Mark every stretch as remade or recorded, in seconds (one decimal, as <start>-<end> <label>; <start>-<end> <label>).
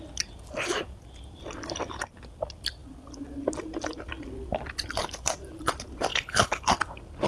0.0-6.1 recorded; 6.1-6.6 remade; 6.6-7.3 recorded